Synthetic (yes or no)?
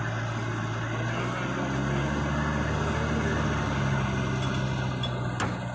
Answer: no